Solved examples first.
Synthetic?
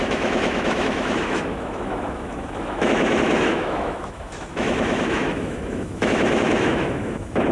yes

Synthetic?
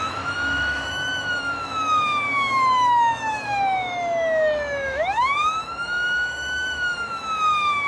yes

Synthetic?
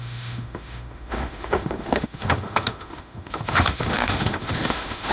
yes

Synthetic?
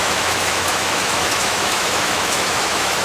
yes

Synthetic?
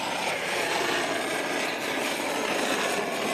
no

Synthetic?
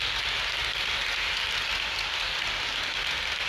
no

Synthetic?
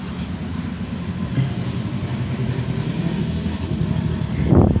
no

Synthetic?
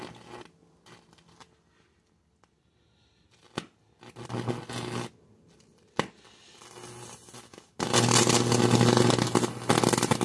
no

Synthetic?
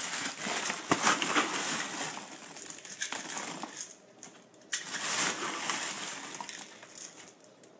no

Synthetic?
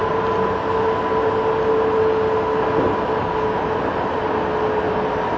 no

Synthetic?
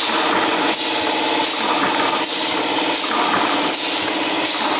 no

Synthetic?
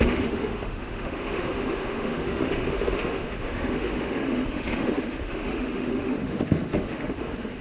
yes